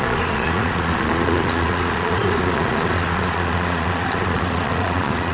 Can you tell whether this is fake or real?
fake